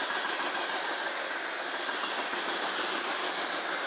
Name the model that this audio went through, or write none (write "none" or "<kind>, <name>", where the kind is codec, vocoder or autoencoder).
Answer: none